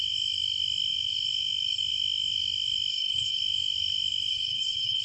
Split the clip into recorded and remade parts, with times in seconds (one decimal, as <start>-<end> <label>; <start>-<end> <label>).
0.0-2.9 recorded; 2.9-3.4 remade; 3.4-4.3 recorded; 4.3-5.0 remade